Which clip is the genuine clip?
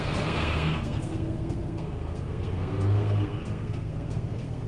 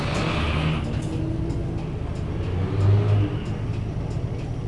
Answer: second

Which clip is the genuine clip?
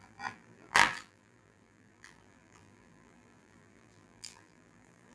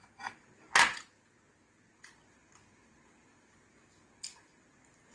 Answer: second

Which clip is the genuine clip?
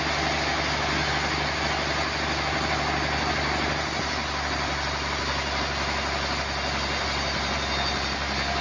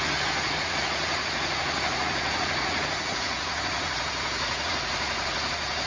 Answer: first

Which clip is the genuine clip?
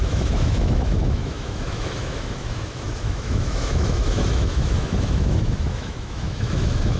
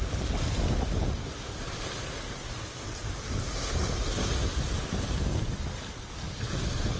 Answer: second